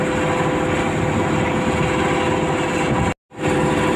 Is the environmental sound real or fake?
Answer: real